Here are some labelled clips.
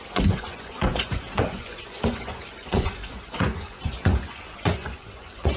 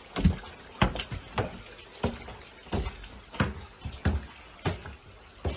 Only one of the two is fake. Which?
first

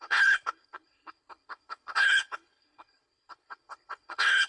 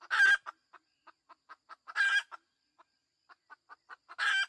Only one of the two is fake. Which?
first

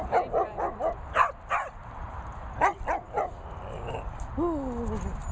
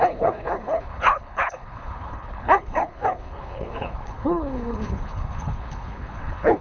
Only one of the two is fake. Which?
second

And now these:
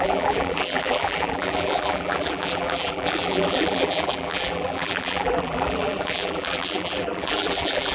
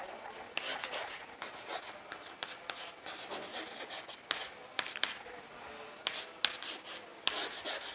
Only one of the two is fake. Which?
first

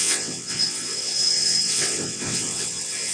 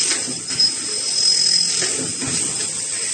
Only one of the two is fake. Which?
first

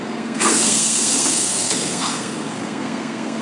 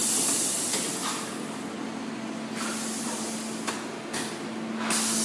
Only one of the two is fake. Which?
first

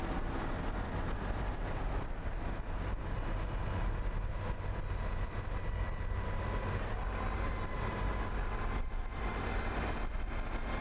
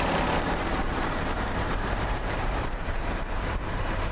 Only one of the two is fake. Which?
second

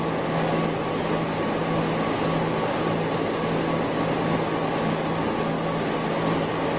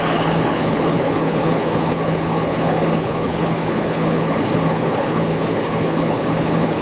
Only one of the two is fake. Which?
second